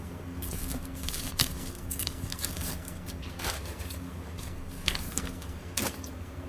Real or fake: fake